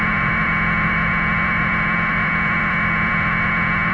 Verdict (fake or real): fake